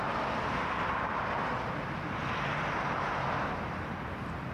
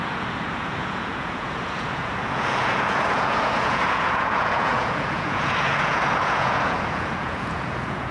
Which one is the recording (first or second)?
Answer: first